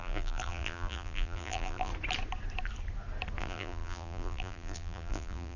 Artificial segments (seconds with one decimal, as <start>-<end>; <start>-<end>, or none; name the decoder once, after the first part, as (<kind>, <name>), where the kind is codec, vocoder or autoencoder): 0.0-1.9 (vocoder, BigVGAN v2); 3.4-5.6